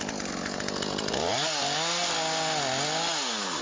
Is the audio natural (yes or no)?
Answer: yes